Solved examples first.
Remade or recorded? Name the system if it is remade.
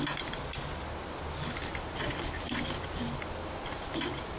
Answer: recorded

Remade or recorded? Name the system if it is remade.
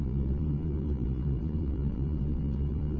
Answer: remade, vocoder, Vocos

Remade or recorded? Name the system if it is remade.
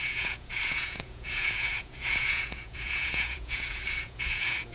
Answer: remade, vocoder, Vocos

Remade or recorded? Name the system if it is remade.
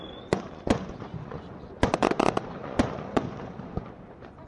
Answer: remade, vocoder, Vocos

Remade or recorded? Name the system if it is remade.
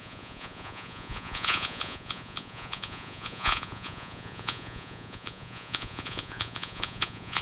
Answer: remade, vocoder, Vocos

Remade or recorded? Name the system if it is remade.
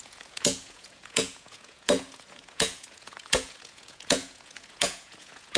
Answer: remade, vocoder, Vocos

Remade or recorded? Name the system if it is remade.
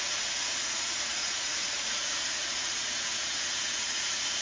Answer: remade, vocoder, Vocos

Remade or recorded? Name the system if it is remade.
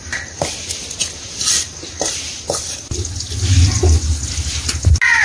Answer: recorded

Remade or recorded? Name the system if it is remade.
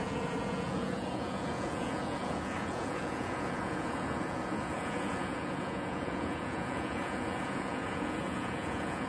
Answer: remade, vocoder, Vocos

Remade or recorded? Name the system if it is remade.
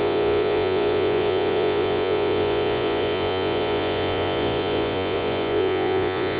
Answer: remade, vocoder, Vocos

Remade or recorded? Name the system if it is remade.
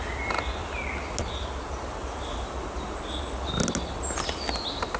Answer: recorded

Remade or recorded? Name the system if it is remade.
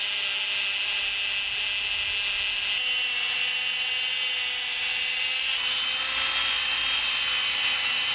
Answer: recorded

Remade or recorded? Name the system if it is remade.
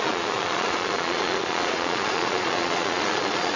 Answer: remade, vocoder, Vocos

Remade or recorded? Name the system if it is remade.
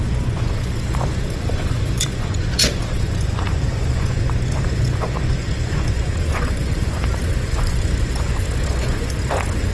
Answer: remade, vocoder, Vocos